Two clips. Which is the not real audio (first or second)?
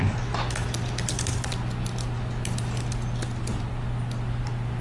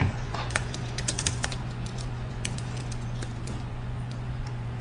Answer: second